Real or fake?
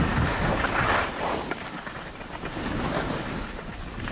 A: real